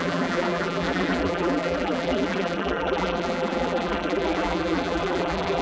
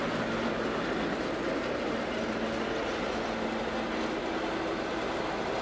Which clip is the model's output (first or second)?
first